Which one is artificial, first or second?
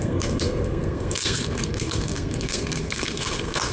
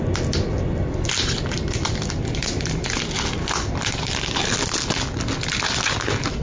first